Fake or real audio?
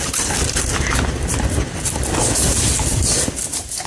real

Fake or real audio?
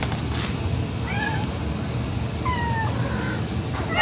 real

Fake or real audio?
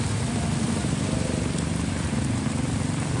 real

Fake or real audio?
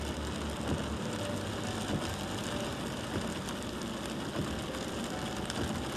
real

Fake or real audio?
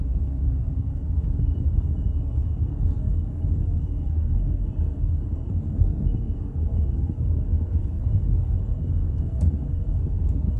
fake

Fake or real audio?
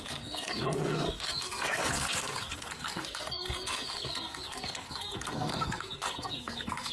fake